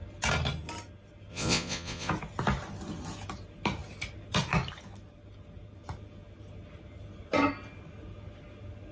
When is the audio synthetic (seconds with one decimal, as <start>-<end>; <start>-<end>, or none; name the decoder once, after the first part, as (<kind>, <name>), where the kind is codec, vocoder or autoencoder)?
1.3-2.1 (vocoder, Vocos)

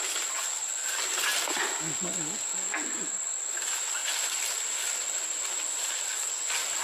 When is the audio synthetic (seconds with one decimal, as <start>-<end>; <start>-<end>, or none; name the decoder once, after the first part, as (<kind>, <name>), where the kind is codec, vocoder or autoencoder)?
none